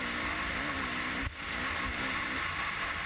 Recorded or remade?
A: recorded